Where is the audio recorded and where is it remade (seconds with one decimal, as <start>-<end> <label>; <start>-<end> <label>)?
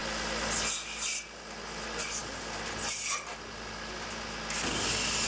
0.0-5.3 recorded